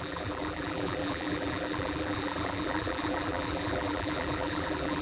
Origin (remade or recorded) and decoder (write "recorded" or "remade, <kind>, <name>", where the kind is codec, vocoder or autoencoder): remade, vocoder, BigVGAN v2